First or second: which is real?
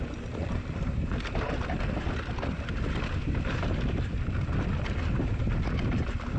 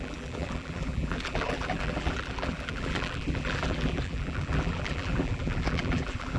first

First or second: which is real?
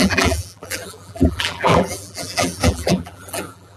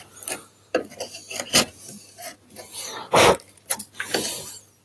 second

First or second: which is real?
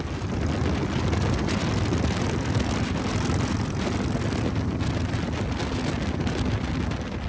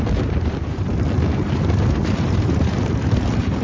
first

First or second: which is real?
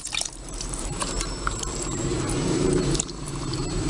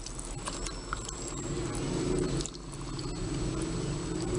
second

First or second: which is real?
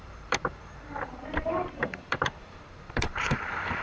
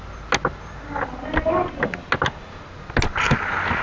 second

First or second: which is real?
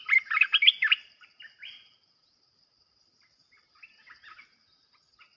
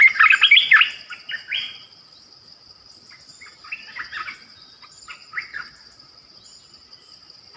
second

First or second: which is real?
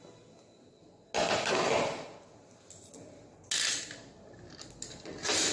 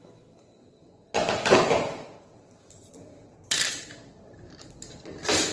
first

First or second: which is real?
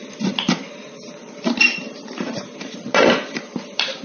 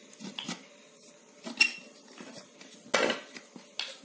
second